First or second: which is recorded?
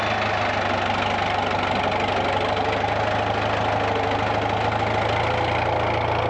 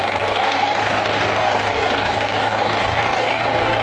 first